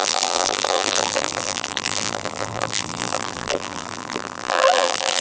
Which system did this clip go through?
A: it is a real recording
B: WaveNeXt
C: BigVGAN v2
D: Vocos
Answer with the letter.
C